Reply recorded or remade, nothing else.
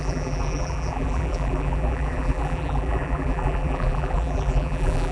remade